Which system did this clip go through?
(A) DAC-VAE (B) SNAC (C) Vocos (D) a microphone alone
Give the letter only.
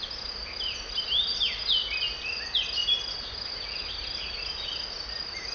D